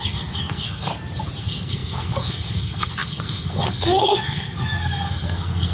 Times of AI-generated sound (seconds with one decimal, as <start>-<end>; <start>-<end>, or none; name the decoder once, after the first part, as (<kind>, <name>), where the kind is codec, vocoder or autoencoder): 0.0-0.9 (codec, SNAC); 1.4-5.7